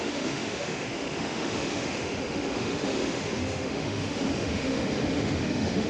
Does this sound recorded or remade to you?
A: remade